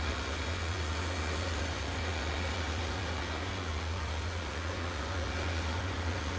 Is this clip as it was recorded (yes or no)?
no